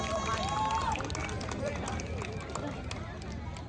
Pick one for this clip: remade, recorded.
recorded